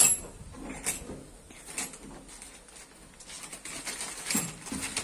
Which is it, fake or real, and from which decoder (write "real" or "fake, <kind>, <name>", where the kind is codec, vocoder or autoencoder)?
real